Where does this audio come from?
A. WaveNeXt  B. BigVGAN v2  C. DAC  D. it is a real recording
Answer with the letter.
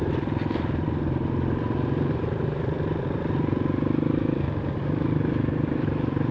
D